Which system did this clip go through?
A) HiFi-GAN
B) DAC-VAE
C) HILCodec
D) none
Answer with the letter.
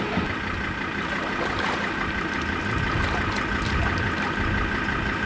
D